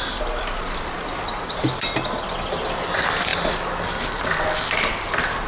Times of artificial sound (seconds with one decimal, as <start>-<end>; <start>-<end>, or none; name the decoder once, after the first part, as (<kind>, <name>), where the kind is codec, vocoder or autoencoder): 0.0-5.5 (vocoder, BigVGAN v2)